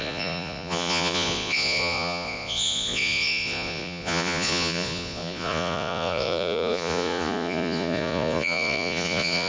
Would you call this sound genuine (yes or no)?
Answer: no